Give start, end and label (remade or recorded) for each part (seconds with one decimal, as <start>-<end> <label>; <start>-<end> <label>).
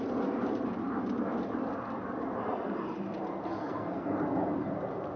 0.0-3.6 recorded; 3.6-4.2 remade; 4.2-5.2 recorded